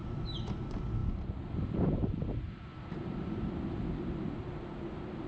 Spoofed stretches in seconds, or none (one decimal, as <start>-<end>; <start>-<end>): 0.0-0.6; 1.0-4.1